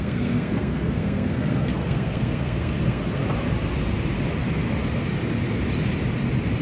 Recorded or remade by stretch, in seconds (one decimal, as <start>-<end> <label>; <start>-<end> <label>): 0.0-3.2 remade; 3.2-6.6 recorded